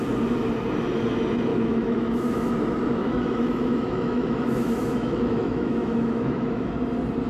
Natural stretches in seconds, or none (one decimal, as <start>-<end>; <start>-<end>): 0.0-1.5; 2.5-3.0; 6.7-7.3